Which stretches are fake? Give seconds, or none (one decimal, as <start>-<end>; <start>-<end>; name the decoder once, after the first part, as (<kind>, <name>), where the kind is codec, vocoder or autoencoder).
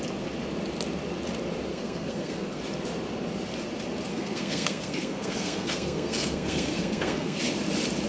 1.7-2.6 (codec, SNAC); 4.1-7.4